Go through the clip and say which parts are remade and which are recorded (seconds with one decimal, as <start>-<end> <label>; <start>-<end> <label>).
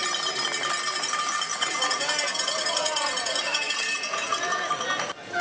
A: 0.0-1.5 recorded; 1.5-4.7 remade; 4.7-5.4 recorded